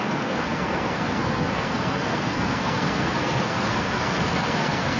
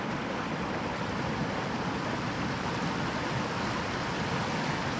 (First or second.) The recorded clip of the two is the second